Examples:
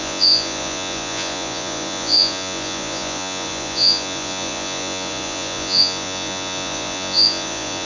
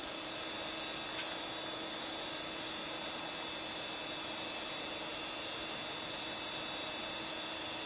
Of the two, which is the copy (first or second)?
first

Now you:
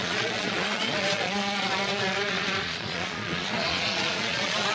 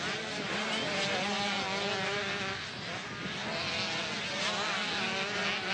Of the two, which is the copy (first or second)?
first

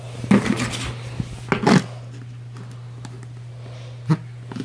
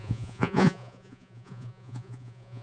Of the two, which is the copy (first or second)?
second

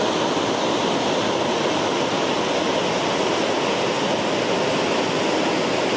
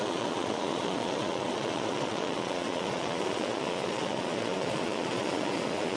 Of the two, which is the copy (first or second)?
second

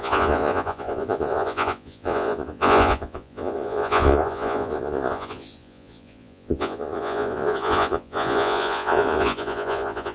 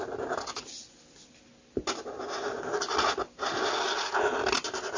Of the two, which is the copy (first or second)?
first